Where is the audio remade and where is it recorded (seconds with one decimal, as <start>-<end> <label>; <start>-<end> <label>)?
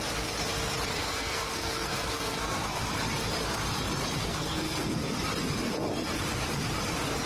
0.0-1.0 recorded; 1.0-2.9 remade; 2.9-4.2 recorded; 4.2-5.0 remade; 5.0-7.3 recorded